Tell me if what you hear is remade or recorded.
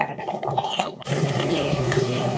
remade